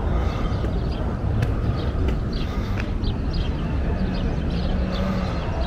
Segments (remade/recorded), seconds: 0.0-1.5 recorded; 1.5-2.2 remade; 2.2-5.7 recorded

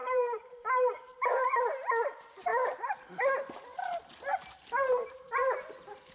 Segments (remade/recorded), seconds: 0.0-2.5 remade; 2.5-5.1 recorded; 5.1-6.1 remade

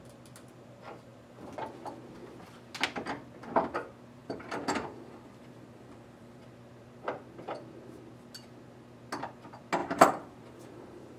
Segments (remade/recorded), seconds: 0.0-4.2 recorded; 4.2-6.4 remade; 6.4-9.8 recorded; 9.8-11.2 remade